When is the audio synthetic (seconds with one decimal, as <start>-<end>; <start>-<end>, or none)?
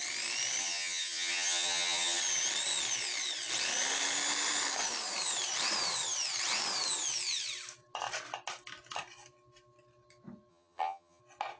0.6-2.2; 10.5-11.2